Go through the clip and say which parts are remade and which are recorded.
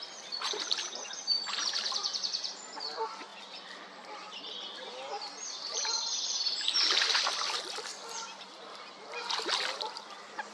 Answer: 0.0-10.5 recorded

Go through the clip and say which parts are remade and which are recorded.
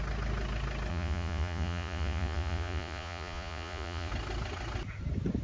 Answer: 0.0-0.9 recorded; 0.9-4.1 remade; 4.1-5.4 recorded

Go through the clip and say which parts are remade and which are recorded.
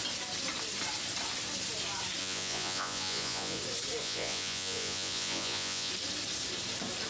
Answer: 0.0-2.2 recorded; 2.2-3.6 remade; 3.6-4.0 recorded; 4.0-5.9 remade; 5.9-7.1 recorded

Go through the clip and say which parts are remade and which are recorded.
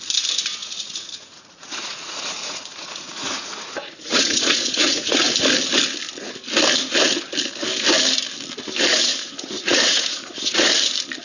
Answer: 0.0-0.6 recorded; 0.6-5.3 remade; 5.3-8.9 recorded; 8.9-10.7 remade; 10.7-11.2 recorded